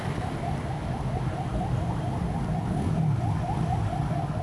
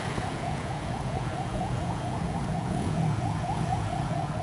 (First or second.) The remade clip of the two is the second